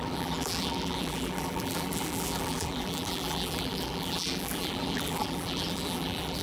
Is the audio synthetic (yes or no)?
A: yes